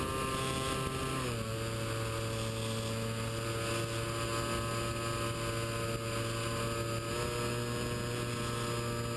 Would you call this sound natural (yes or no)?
yes